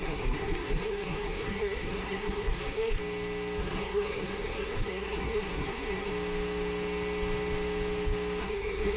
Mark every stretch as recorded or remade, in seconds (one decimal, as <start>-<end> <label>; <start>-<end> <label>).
0.0-3.0 remade; 3.0-3.6 recorded; 3.6-6.1 remade; 6.1-8.4 recorded; 8.4-9.0 remade